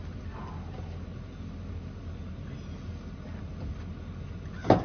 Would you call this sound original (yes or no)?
yes